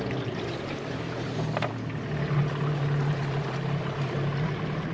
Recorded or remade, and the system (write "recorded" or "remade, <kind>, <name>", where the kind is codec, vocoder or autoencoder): recorded